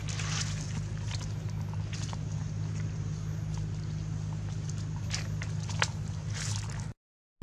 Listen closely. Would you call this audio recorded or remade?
recorded